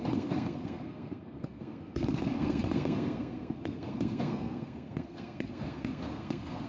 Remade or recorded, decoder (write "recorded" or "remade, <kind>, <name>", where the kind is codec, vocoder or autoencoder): remade, codec, SNAC